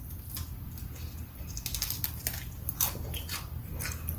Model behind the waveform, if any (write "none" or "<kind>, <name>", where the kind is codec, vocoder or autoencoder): none